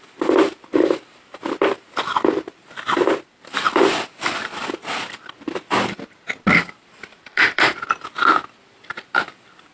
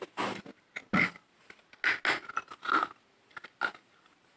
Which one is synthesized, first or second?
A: first